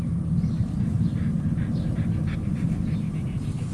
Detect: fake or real real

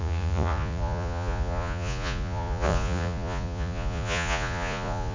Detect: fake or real fake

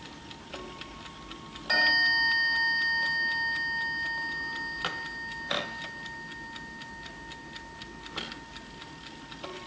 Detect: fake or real real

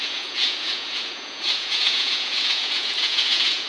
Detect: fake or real fake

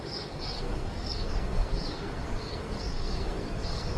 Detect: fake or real fake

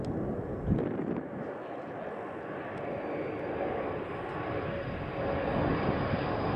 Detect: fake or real real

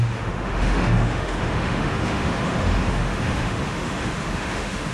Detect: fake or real fake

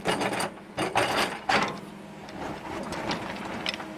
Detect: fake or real real